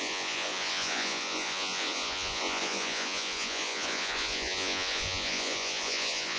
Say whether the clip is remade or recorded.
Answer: remade